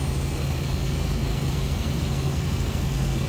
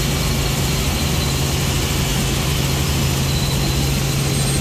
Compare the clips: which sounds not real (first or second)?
first